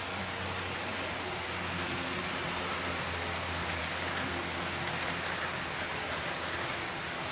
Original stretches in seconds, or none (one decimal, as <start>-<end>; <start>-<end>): 0.0-7.3